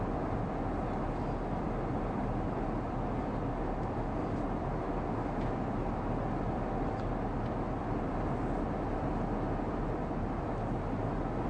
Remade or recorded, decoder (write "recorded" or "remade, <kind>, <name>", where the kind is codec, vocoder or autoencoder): recorded